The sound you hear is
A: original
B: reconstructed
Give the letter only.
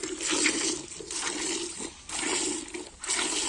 A